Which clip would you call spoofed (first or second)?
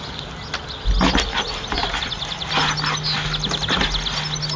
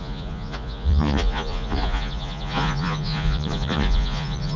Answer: second